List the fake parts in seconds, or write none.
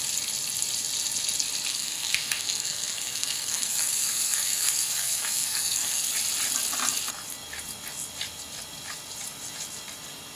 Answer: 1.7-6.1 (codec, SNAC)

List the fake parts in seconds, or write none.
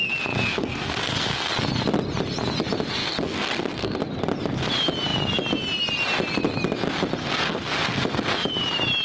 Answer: 0.5-1.5 (codec, SNAC); 3.0-4.0; 7.2-8.0